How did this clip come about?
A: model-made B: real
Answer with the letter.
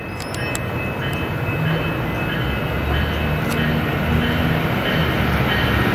B